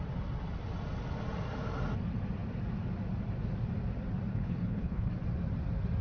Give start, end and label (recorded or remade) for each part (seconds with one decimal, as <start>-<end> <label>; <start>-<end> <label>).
0.0-4.3 recorded; 4.3-5.1 remade; 5.1-6.0 recorded